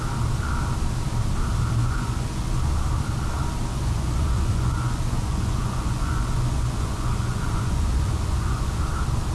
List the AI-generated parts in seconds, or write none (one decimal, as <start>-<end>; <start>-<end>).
1.8-2.6; 3.7-8.8